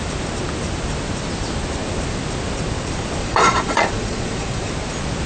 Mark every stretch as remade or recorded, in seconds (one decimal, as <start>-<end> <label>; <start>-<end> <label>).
0.0-3.2 recorded; 3.2-4.7 remade; 4.7-5.3 recorded